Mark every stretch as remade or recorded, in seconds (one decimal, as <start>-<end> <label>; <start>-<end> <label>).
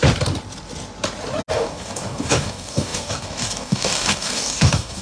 0.0-1.5 recorded; 1.5-5.0 remade